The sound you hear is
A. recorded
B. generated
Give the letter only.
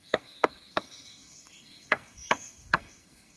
B